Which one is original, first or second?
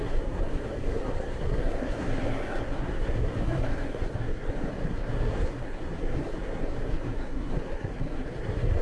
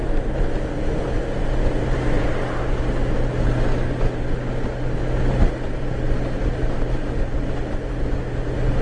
second